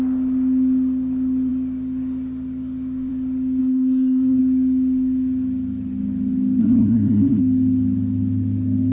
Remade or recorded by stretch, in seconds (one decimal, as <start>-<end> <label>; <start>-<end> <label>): 0.0-3.6 recorded; 3.6-4.4 remade; 4.4-6.6 recorded; 6.6-7.4 remade; 7.4-8.9 recorded

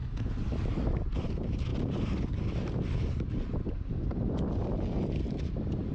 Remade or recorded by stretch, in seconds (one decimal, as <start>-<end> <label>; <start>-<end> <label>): 0.0-5.9 recorded

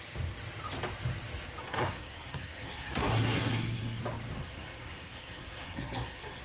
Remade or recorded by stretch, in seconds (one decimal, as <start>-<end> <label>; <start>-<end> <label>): 0.0-1.6 recorded; 1.6-4.0 remade; 4.0-4.4 recorded; 4.4-6.4 remade

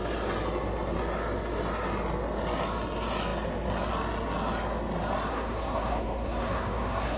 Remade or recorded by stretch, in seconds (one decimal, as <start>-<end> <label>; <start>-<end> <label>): 0.0-5.3 recorded; 5.3-7.2 remade

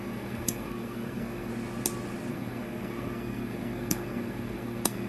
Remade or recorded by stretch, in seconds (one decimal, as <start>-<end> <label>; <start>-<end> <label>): 0.0-1.5 remade; 1.5-2.3 recorded; 2.3-5.1 remade

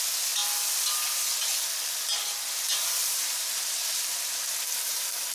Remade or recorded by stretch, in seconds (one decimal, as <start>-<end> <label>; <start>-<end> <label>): 0.0-5.3 recorded